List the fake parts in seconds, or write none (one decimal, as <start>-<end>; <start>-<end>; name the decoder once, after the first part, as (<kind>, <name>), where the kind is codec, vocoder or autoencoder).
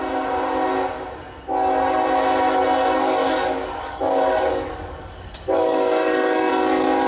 3.0-6.5 (codec, DAC)